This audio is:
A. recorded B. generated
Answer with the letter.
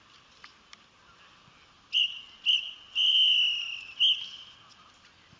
A